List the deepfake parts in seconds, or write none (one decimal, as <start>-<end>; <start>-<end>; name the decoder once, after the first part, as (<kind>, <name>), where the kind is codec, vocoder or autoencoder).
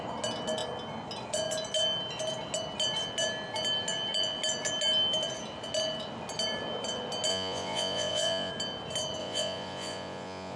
7.3-8.5 (vocoder, Vocos); 9.2-10.6